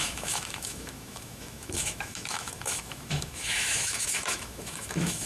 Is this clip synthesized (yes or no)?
yes